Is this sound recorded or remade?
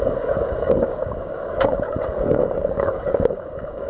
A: remade